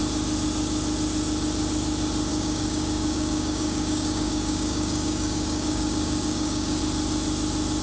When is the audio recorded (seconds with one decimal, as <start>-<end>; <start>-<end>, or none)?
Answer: 0.0-2.3; 6.8-7.8